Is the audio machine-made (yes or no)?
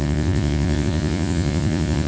yes